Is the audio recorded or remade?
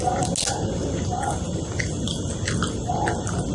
recorded